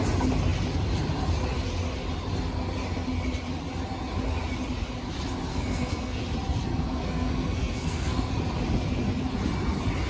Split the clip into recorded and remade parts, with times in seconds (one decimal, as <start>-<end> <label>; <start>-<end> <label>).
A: 0.0-5.5 recorded; 5.5-6.2 remade; 6.2-6.7 recorded; 6.7-8.3 remade; 8.3-10.1 recorded